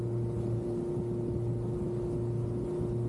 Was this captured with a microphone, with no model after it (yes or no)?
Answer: yes